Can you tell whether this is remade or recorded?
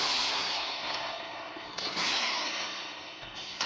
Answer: remade